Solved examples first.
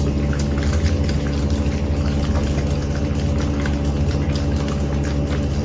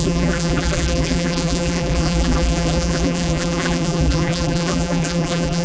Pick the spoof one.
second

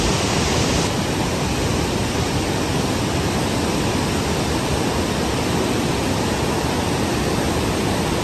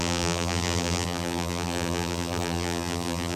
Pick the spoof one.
second